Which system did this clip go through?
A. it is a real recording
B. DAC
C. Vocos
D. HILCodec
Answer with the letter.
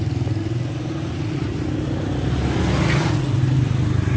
A